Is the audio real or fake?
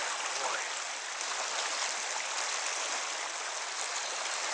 real